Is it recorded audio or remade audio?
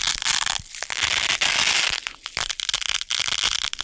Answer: recorded